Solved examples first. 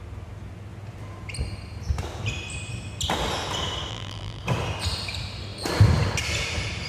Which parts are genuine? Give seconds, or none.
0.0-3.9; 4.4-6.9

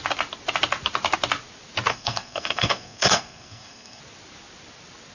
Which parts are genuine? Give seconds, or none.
0.0-1.9; 4.0-5.1

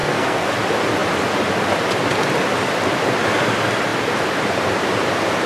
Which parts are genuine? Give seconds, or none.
0.5-5.5

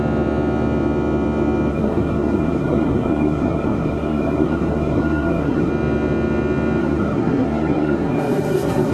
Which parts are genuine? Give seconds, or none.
0.0-1.7; 5.7-6.8

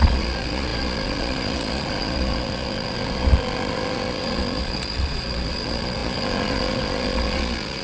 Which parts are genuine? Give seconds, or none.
none

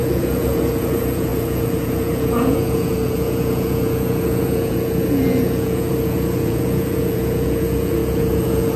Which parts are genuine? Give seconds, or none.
none